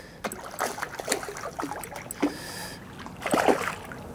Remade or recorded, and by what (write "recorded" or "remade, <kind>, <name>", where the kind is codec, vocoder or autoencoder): recorded